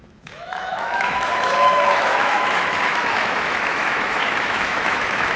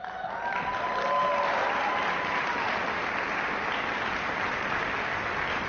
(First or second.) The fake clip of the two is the first